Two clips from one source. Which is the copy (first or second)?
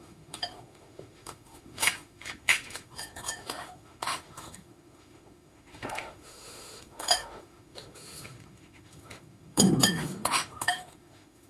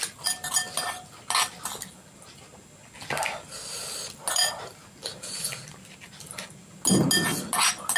first